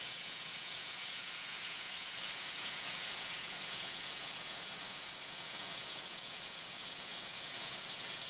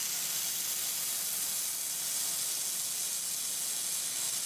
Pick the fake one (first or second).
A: first